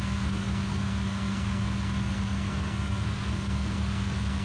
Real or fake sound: fake